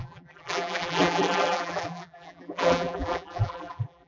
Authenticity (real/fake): fake